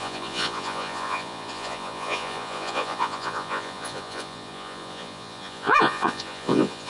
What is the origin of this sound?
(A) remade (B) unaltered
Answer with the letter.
A